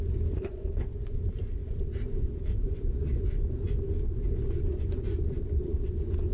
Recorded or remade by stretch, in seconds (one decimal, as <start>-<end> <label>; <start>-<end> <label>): 0.0-6.3 remade